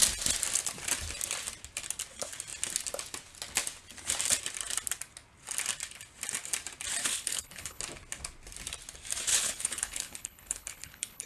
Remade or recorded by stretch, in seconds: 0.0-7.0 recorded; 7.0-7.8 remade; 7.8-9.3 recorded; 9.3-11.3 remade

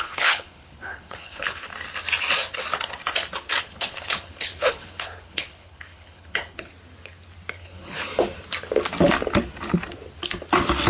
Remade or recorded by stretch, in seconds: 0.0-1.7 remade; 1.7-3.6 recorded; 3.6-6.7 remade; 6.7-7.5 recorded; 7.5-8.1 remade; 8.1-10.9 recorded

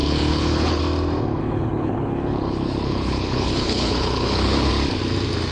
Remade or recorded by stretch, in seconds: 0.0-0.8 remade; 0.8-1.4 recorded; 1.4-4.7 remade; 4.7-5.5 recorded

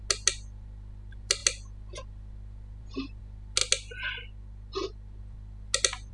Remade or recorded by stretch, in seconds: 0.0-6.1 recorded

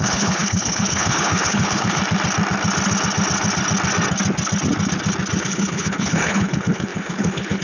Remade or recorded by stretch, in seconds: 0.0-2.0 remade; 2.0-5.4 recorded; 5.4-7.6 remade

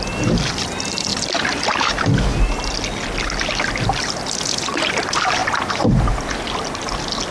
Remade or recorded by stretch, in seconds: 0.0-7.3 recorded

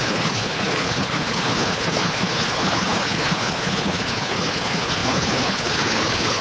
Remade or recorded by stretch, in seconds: 0.0-6.4 remade

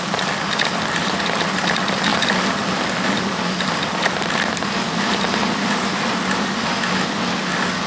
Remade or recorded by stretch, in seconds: 0.0-7.9 recorded